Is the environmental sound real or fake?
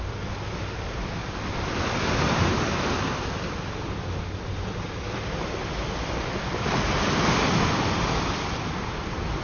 real